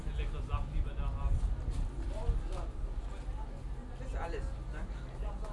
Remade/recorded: recorded